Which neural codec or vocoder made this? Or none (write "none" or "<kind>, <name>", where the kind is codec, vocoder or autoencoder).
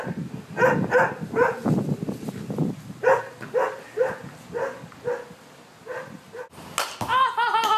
none